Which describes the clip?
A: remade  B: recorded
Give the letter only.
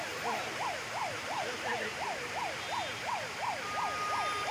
B